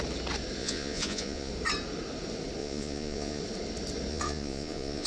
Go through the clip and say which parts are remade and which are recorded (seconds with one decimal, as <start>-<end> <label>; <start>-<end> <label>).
0.0-0.6 recorded; 0.6-1.5 remade; 1.5-2.6 recorded; 2.6-3.4 remade; 3.4-4.1 recorded; 4.1-5.1 remade